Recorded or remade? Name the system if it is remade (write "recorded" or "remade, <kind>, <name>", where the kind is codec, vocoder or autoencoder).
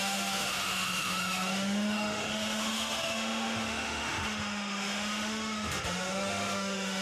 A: remade, autoencoder, DAC-VAE